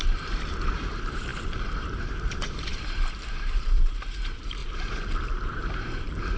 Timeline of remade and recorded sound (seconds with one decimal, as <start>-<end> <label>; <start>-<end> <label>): 0.0-4.6 remade; 4.6-5.3 recorded; 5.3-6.4 remade